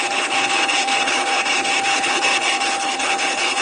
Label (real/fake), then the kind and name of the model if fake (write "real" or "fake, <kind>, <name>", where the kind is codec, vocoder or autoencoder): fake, codec, HILCodec